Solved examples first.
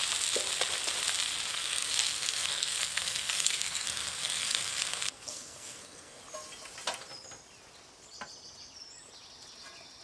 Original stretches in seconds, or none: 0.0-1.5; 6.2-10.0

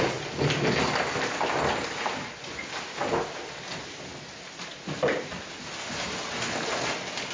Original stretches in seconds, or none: 0.0-7.3

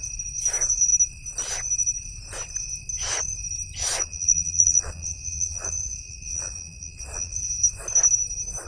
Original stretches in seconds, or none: 0.0-3.8; 7.4-8.7

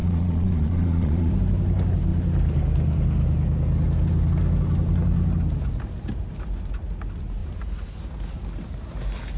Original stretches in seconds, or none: 1.3-9.4

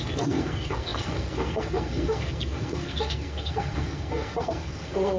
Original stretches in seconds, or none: none

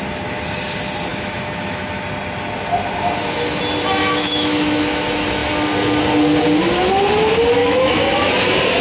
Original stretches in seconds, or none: 0.0-1.1; 2.0-4.0; 5.0-7.6; 8.3-8.8